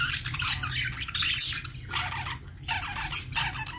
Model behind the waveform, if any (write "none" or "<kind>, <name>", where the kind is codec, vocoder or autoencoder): none